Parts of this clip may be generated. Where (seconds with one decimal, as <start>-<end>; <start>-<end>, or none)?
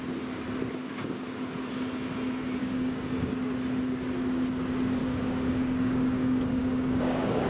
2.6-3.3; 5.0-7.5